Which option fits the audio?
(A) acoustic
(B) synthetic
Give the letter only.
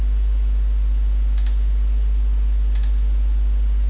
A